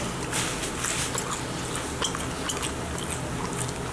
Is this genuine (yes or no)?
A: yes